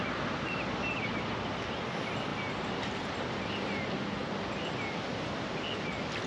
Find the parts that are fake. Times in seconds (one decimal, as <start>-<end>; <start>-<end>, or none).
2.3-3.3